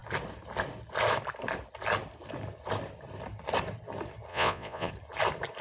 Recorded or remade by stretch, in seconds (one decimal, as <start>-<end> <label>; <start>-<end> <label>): 0.0-4.3 recorded; 4.3-4.9 remade; 4.9-5.6 recorded